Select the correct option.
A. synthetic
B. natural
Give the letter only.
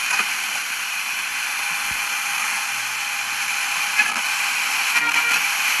B